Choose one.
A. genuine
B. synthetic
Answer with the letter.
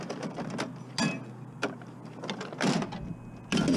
A